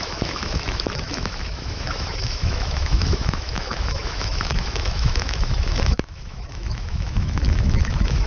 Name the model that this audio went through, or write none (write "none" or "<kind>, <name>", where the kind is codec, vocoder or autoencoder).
autoencoder, DAC-VAE